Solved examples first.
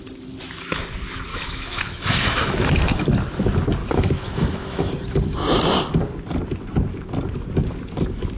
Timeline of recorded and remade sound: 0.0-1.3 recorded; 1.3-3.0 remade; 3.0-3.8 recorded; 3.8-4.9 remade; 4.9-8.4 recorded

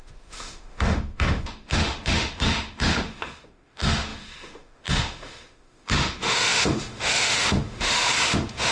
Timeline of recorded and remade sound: 0.0-8.7 remade

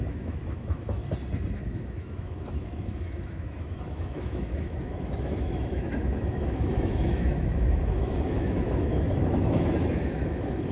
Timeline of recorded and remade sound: 0.0-1.0 remade; 1.0-1.6 recorded; 1.6-10.7 remade

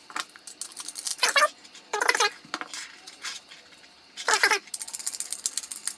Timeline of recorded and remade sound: 0.0-6.0 recorded

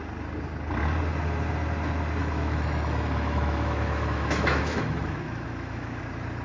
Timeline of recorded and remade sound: 0.0-2.2 recorded; 2.2-6.0 remade; 6.0-6.4 recorded

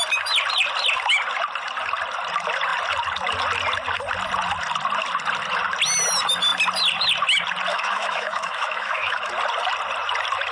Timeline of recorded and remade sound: 0.0-7.7 recorded; 7.7-9.3 remade; 9.3-10.5 recorded